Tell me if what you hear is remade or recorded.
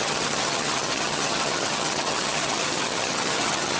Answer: remade